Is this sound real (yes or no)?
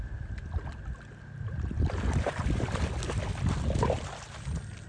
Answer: yes